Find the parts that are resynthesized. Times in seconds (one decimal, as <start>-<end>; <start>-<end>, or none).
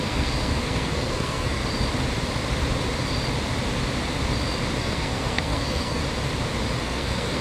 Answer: 0.0-1.6; 4.8-6.0; 6.8-7.4